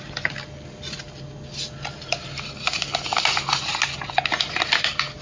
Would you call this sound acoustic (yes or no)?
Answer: yes